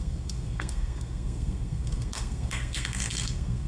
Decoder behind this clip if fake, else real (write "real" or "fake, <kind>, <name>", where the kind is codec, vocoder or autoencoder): fake, codec, SNAC